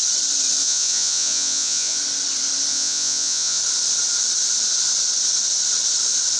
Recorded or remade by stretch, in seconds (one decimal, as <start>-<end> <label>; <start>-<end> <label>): 0.0-0.6 recorded; 0.6-2.0 remade; 2.0-2.7 recorded; 2.7-3.6 remade; 3.6-6.4 recorded